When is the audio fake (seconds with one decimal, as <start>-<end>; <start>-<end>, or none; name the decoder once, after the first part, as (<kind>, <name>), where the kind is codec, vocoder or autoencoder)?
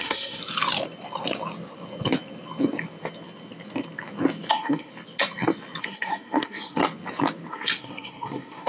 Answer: 0.0-0.4 (codec, SNAC); 4.5-4.9; 5.8-6.8; 7.5-8.7